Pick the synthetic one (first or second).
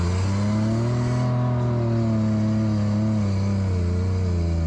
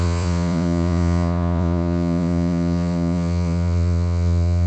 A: second